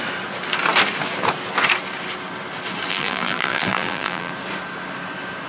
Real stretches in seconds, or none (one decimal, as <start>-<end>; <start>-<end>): 0.0-2.9; 4.3-5.5